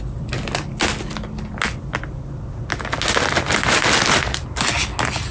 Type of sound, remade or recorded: recorded